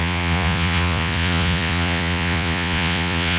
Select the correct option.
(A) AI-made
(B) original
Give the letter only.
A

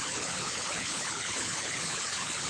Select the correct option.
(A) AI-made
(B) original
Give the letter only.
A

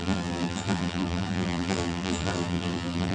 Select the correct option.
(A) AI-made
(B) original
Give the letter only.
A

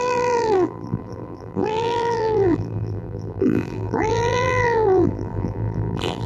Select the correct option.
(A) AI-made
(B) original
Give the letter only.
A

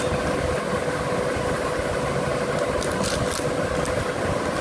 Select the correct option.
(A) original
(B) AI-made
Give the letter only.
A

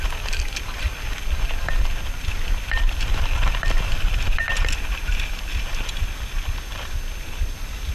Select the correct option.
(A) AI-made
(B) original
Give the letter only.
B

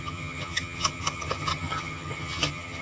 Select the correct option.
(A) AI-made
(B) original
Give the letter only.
A